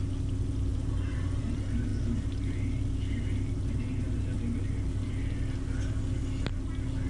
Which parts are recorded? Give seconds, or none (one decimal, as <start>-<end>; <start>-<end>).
0.0-0.7; 1.3-7.1